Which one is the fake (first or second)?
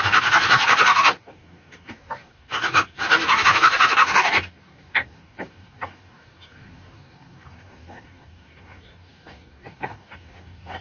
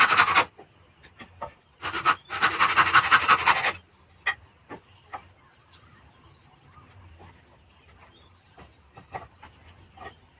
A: first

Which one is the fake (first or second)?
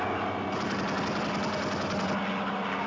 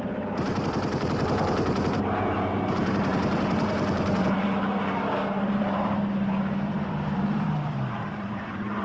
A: second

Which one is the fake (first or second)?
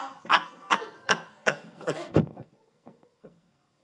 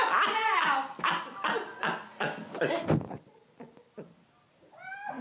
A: first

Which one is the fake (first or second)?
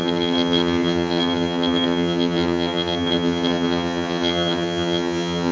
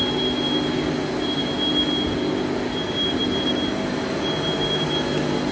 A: first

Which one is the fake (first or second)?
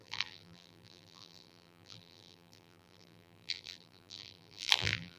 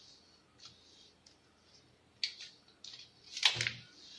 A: first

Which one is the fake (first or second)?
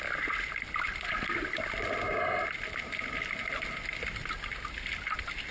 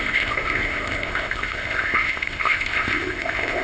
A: second